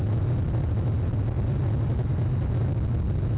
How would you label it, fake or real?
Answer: real